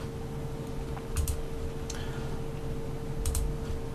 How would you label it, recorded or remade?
recorded